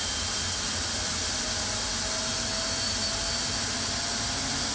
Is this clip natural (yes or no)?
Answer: yes